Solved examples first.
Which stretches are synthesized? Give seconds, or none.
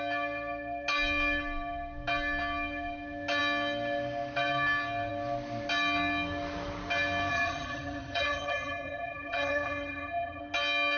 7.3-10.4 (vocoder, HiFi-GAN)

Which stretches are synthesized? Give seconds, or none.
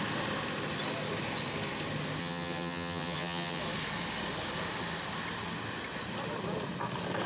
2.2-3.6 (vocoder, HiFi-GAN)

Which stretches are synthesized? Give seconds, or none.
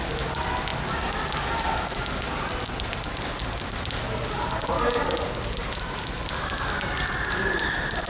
none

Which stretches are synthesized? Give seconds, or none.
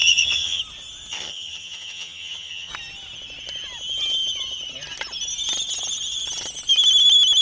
0.0-0.6 (vocoder, HiFi-GAN); 1.1-2.7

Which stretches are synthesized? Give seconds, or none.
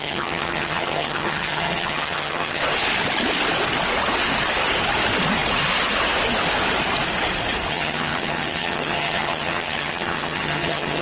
0.0-2.6 (vocoder, HiFi-GAN); 7.7-11.0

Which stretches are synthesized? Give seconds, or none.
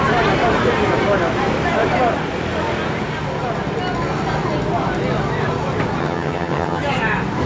6.0-6.8 (vocoder, HiFi-GAN)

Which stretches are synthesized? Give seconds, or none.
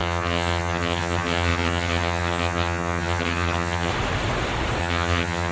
0.0-3.9 (vocoder, HiFi-GAN); 4.8-5.5